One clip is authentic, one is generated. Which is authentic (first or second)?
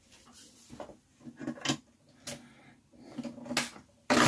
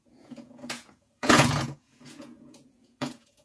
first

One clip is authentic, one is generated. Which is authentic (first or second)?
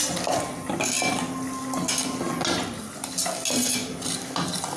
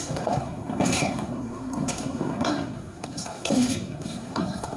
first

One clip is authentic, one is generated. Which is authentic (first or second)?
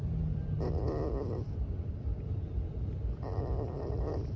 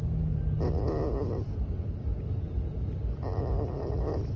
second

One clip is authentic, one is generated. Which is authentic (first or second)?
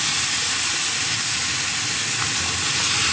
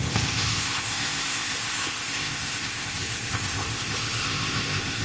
first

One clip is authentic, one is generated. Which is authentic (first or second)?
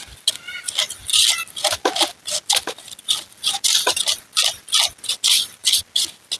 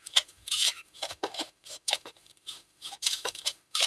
first